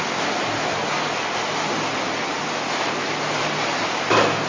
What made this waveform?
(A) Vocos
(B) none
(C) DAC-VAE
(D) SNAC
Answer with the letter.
B